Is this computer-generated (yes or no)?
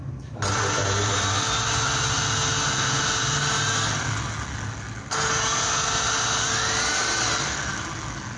no